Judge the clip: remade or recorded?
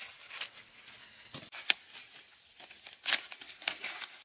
recorded